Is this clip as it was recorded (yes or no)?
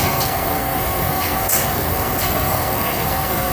no